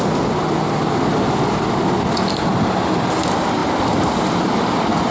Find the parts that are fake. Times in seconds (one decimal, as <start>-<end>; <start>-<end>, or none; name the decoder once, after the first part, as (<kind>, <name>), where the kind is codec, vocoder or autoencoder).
none